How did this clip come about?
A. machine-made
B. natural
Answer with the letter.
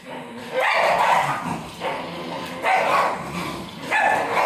B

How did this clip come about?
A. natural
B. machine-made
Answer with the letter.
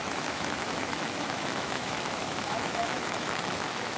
B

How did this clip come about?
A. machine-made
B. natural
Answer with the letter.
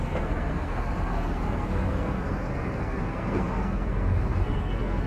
A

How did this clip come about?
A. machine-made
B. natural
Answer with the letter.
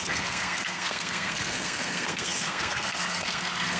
A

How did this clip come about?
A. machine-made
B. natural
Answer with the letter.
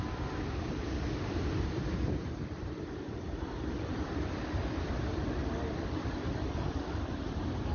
A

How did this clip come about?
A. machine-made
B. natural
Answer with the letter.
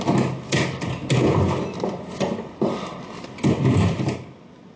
B